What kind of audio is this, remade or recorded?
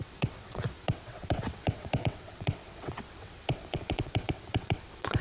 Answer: remade